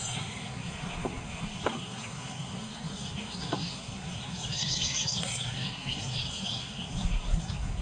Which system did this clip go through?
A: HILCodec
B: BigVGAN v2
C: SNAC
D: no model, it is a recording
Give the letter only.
C